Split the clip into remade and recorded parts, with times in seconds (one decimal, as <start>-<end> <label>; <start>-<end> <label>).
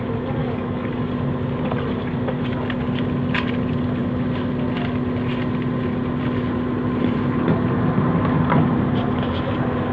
0.0-0.4 recorded; 0.4-1.1 remade; 1.1-9.9 recorded